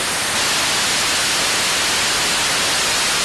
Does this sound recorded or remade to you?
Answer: recorded